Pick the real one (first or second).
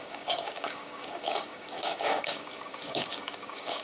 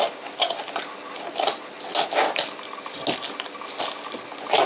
second